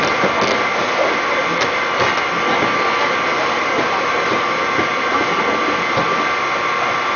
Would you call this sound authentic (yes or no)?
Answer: yes